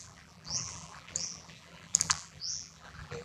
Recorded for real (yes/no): no